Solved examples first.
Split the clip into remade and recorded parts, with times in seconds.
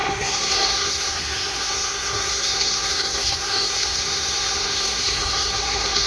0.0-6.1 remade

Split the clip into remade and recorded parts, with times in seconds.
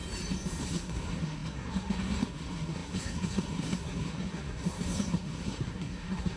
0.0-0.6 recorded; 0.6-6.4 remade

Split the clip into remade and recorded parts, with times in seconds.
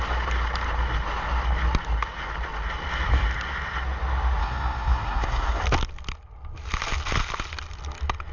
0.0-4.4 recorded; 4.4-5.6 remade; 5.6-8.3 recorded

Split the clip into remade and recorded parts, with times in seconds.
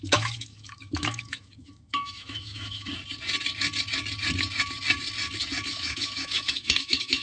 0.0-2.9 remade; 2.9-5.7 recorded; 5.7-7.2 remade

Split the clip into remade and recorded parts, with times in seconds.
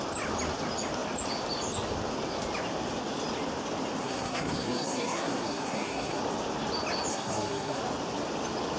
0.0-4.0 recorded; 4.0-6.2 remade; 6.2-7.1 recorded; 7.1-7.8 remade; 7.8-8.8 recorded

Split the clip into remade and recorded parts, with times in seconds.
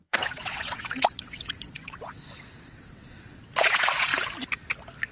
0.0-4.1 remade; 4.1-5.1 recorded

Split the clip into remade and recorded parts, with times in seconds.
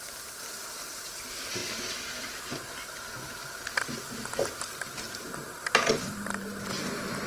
0.0-1.6 remade; 1.6-5.2 recorded; 5.2-7.3 remade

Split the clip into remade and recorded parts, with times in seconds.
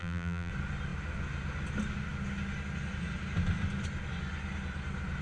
0.0-0.5 remade; 0.5-5.2 recorded